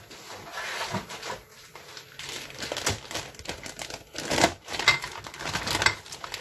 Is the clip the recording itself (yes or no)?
yes